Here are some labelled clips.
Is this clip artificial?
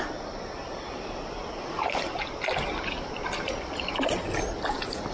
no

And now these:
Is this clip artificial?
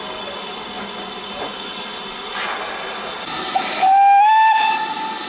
no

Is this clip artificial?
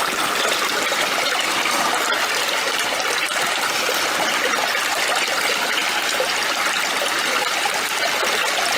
no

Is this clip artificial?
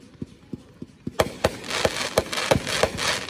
no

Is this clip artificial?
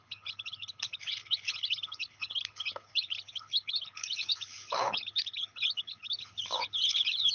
yes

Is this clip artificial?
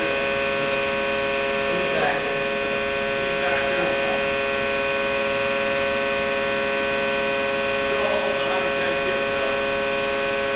no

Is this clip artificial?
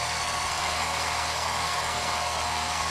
yes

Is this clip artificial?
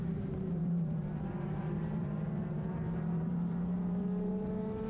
yes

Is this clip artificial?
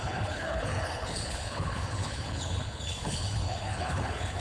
yes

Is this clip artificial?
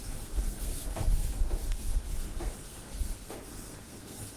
yes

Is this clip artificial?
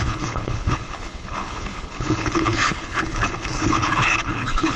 yes